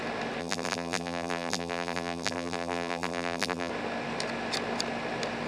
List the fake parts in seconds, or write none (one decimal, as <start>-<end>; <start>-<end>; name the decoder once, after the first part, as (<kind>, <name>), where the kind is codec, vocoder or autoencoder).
0.4-3.7 (vocoder, BigVGAN v2)